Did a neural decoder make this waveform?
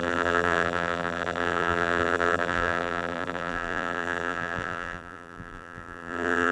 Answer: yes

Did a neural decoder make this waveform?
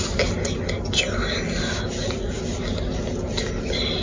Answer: no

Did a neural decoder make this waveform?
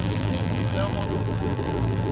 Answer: yes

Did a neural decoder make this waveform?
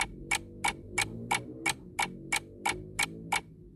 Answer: no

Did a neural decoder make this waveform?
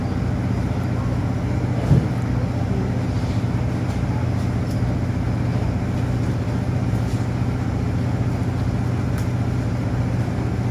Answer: no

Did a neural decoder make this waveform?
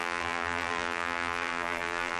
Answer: yes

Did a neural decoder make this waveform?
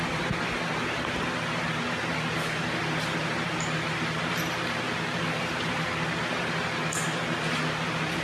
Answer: no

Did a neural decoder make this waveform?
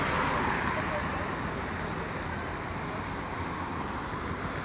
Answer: no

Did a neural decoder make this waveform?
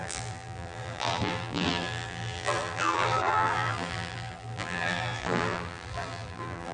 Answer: yes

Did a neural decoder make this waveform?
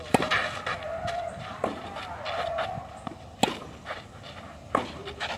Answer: no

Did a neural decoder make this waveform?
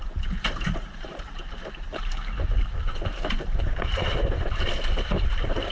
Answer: yes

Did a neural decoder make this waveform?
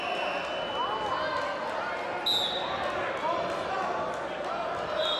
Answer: no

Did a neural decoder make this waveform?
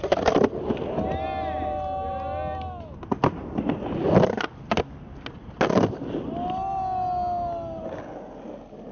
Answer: no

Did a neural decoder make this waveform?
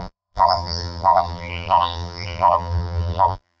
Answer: yes